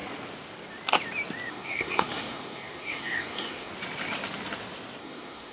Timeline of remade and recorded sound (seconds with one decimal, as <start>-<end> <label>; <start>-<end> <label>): 0.0-1.5 recorded; 1.5-3.7 remade; 3.7-5.0 recorded; 5.0-5.5 remade